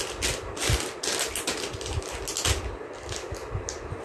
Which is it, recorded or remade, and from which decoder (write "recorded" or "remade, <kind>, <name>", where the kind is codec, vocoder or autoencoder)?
recorded